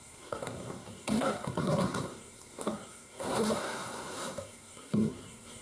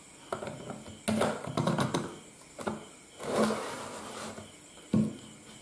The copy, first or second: first